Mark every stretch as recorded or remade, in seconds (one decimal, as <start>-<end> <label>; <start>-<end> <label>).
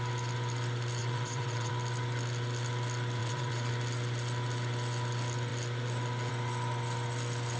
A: 0.0-1.0 recorded; 1.0-1.7 remade; 1.7-3.2 recorded; 3.2-3.7 remade; 3.7-7.6 recorded